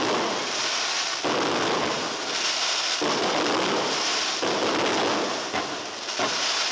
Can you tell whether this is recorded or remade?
recorded